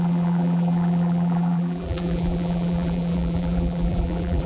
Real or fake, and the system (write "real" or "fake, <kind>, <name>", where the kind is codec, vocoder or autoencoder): fake, vocoder, BigVGAN v2